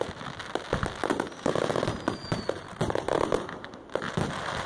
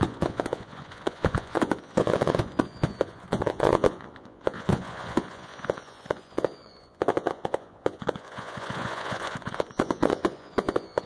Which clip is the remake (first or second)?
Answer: second